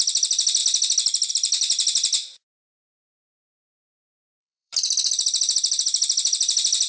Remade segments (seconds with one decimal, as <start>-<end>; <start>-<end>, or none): 2.7-6.9